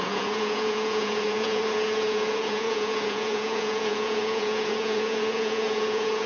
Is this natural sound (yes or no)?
no